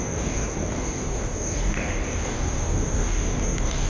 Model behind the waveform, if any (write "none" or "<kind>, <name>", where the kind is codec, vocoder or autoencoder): codec, DAC